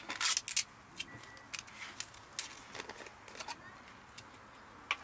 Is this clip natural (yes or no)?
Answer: yes